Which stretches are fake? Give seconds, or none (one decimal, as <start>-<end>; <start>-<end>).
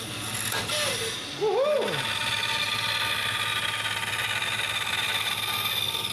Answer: none